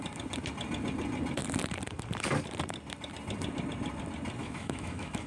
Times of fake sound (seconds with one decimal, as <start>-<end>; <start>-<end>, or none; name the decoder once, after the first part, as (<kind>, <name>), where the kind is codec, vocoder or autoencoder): 4.4-5.3 (autoencoder, DAC-VAE)